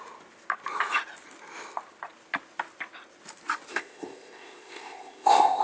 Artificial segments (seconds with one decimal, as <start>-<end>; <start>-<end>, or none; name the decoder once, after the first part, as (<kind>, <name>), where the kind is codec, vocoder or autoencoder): 3.7-5.6 (codec, ZipCodec)